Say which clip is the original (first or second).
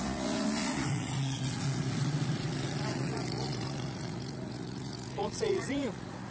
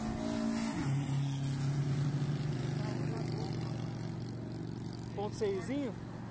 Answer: second